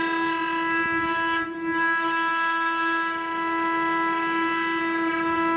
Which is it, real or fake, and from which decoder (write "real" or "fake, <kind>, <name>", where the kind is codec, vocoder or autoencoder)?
real